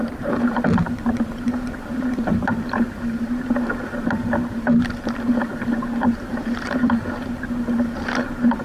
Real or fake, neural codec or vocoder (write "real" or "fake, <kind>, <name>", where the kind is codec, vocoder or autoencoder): fake, vocoder, BigVGAN v2